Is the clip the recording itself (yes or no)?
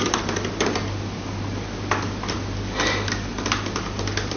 yes